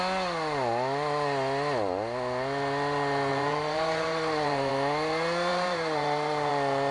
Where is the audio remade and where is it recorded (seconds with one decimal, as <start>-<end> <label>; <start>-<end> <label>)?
0.0-3.3 recorded; 3.3-4.7 remade; 4.7-5.5 recorded; 5.5-6.5 remade; 6.5-6.9 recorded